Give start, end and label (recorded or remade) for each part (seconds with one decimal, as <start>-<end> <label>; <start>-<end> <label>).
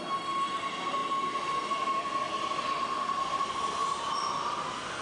0.0-1.0 remade; 1.0-3.2 recorded; 3.2-3.8 remade; 3.8-5.0 recorded